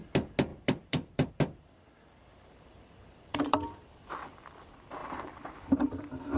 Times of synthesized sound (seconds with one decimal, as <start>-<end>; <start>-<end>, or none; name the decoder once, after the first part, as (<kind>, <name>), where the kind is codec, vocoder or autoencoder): 0.5-1.3 (vocoder, BigVGAN v2); 2.3-4.1; 5.0-5.7

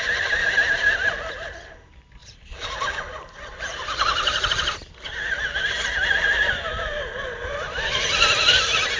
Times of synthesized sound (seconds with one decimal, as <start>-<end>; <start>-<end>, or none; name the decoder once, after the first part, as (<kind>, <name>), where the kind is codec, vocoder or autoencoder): 0.0-9.0 (vocoder, BigVGAN v2)

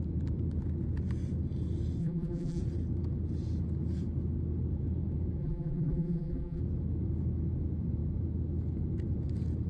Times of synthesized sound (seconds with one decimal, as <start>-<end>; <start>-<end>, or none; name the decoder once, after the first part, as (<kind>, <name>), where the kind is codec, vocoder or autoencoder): 2.0-2.6 (vocoder, BigVGAN v2); 5.4-6.6

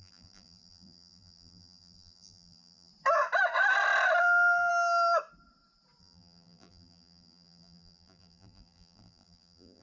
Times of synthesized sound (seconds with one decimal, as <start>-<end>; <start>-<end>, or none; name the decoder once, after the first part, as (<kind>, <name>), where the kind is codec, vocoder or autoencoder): 0.0-2.9 (vocoder, BigVGAN v2); 4.2-4.7; 6.0-9.8